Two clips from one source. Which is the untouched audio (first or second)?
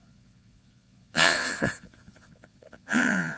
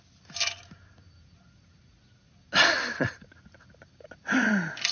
second